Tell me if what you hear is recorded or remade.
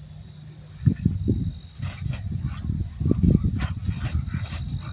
recorded